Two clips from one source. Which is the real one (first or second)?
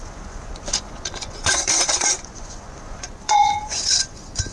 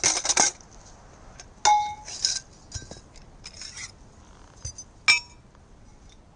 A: second